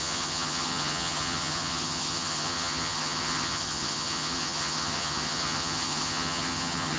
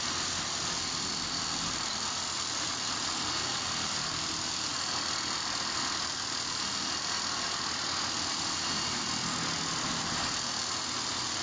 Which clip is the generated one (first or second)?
first